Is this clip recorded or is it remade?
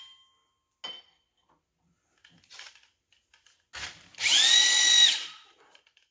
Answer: recorded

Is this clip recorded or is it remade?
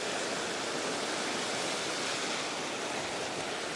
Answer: recorded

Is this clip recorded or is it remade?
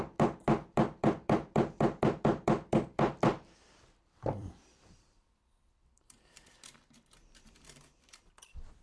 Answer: remade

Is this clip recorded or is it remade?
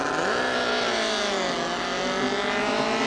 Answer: recorded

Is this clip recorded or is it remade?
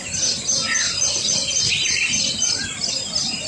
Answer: remade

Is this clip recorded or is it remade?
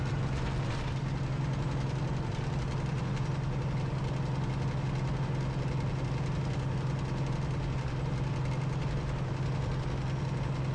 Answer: recorded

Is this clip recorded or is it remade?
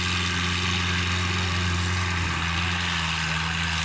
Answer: recorded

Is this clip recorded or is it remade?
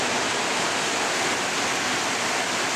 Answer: recorded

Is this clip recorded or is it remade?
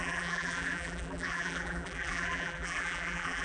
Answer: remade